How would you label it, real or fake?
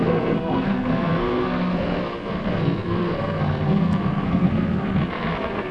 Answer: fake